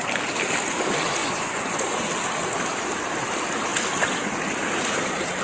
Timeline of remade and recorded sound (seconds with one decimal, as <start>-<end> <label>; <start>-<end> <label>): 0.0-1.2 recorded; 1.2-2.1 remade; 2.1-5.4 recorded